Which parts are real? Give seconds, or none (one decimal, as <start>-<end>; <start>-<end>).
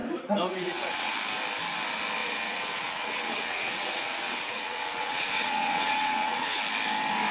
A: 1.1-2.2; 6.6-7.3